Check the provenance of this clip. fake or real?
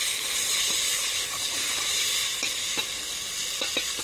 real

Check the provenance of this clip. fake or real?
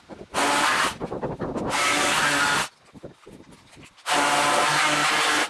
real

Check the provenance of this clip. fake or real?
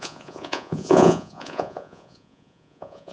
fake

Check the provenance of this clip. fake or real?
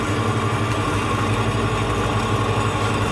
real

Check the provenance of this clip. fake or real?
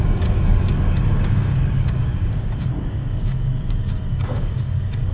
fake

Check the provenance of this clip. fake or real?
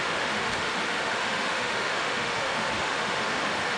fake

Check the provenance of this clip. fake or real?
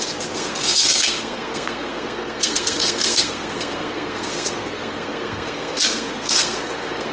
fake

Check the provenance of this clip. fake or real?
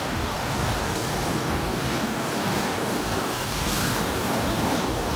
fake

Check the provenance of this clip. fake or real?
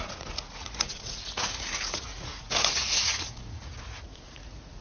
fake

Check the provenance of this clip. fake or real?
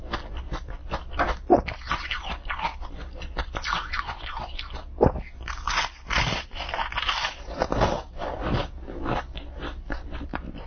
real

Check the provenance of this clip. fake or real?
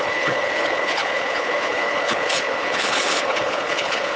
fake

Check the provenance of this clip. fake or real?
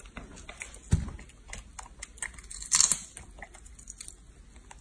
real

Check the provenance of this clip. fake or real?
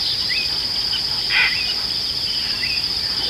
real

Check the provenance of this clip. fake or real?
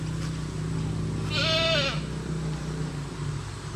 real